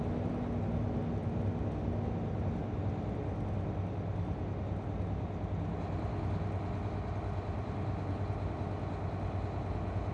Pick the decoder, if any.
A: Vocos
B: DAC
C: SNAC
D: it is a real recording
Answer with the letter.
D